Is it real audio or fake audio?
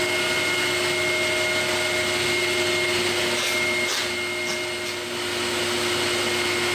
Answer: real